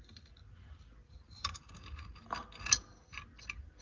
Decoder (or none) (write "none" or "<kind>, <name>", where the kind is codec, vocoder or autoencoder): none